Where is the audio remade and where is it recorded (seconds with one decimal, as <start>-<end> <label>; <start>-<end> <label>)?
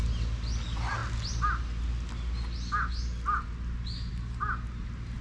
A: 0.0-5.2 recorded